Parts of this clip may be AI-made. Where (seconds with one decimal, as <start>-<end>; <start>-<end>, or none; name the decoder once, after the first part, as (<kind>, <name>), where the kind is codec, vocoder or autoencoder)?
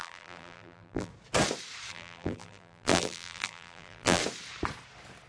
0.0-1.1 (vocoder, BigVGAN v2); 1.9-4.2